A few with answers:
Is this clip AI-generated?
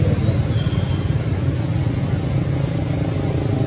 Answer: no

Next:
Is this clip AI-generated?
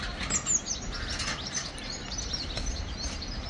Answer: no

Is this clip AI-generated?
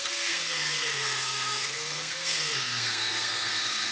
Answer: yes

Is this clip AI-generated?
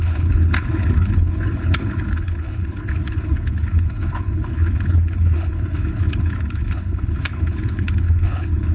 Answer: yes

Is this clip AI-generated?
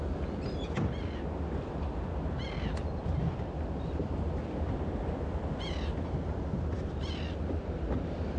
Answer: no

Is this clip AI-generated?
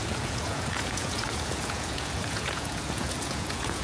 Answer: yes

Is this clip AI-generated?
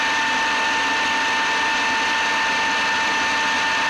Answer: no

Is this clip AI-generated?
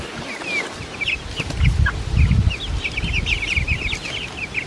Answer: no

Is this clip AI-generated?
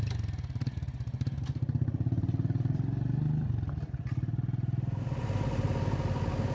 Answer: no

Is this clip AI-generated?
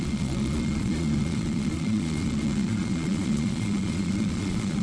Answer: yes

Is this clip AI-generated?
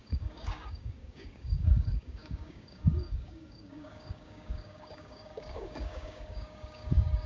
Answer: yes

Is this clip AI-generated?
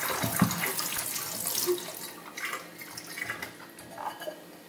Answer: no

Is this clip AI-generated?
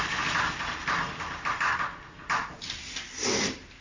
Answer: no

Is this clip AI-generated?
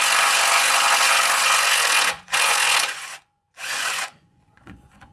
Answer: yes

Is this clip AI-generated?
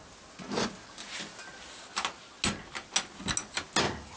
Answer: no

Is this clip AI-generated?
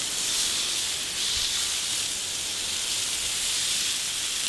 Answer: no